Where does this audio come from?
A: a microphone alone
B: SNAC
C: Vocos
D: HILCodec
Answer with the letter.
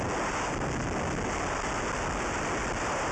A